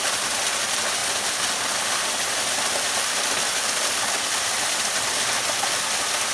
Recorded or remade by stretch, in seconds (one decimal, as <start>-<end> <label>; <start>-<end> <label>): 0.0-6.3 recorded